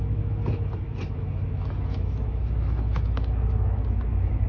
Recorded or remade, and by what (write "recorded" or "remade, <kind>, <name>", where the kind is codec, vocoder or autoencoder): remade, autoencoder, DAC-VAE